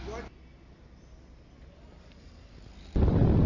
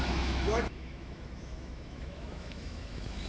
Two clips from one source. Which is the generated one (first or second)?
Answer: second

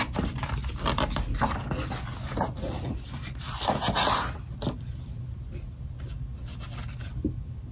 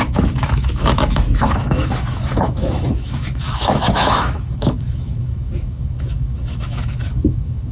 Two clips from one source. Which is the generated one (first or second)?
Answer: second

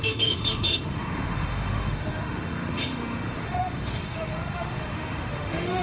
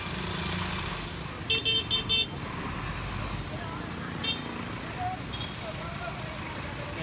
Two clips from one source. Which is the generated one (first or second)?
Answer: first